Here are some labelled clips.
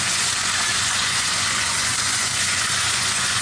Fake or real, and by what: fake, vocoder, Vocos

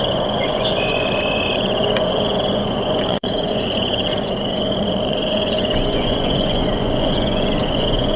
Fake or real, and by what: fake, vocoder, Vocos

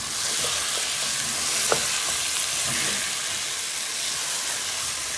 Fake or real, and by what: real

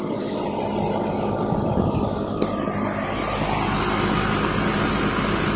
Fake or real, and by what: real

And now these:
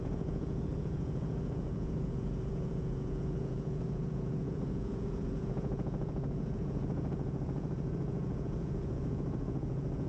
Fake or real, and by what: fake, vocoder, Vocos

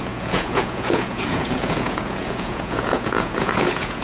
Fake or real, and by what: fake, vocoder, Vocos